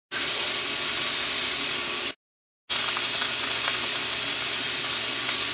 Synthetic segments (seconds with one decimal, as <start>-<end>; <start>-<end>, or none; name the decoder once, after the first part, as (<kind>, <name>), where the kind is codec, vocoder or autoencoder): 3.3-3.9 (vocoder, Vocos); 5.1-5.5